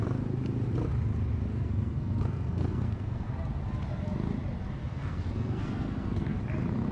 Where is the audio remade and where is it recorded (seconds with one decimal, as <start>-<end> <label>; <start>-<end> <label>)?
0.0-1.5 recorded; 1.5-3.4 remade; 3.4-4.8 recorded; 4.8-6.4 remade; 6.4-6.9 recorded